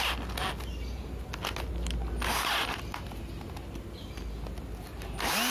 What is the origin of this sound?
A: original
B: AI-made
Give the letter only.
A